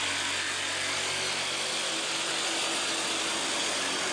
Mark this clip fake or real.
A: real